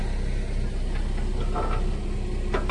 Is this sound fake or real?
real